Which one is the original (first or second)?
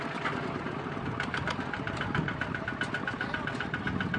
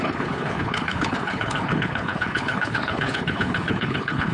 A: first